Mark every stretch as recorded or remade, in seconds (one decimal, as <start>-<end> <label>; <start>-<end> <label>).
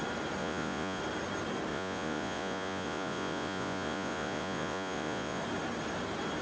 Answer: 0.0-0.4 recorded; 0.4-1.0 remade; 1.0-1.7 recorded; 1.7-5.4 remade; 5.4-6.4 recorded